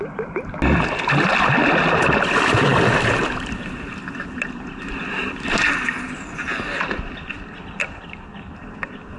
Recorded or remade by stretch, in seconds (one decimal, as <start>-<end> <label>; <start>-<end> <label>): 0.0-9.2 recorded